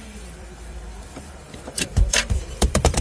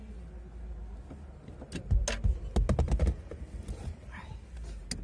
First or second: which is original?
second